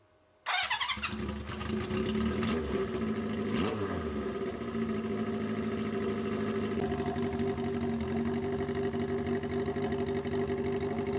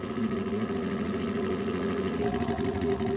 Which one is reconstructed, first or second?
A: second